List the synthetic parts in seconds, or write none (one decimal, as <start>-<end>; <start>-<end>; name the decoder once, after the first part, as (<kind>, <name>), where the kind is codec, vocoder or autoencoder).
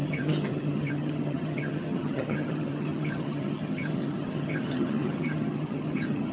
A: 0.0-6.3 (vocoder, HiFi-GAN)